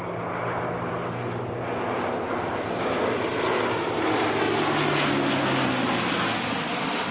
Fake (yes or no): no